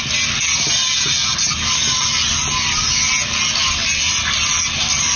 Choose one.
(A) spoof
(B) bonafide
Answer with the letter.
B